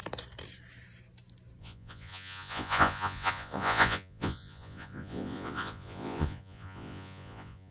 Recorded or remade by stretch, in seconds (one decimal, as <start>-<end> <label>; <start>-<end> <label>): 0.0-1.6 recorded; 1.6-7.7 remade